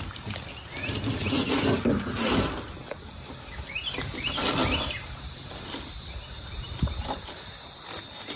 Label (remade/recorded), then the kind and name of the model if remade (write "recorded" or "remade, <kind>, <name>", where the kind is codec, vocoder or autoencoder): recorded